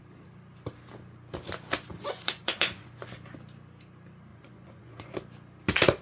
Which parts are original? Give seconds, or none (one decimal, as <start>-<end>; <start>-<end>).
0.0-1.9; 2.9-4.3; 5.1-6.0